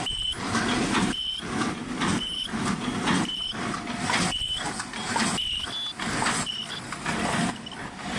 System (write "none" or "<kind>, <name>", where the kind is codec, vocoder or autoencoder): none